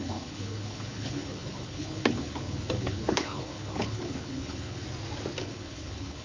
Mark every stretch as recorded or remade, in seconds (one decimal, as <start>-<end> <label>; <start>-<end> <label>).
0.0-4.8 remade; 4.8-5.4 recorded; 5.4-6.2 remade